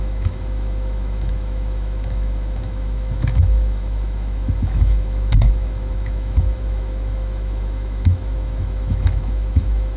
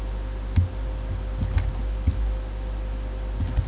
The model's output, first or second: first